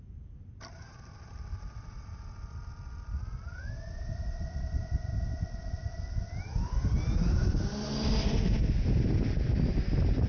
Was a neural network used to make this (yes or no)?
no